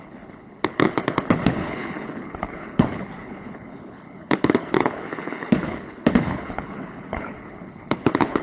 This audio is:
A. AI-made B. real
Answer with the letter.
A